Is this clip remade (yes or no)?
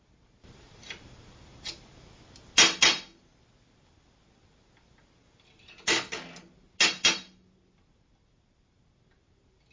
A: no